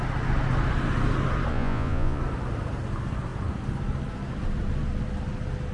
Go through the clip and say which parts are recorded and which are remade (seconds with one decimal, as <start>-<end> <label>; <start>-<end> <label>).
0.0-1.5 recorded; 1.5-2.2 remade; 2.2-5.7 recorded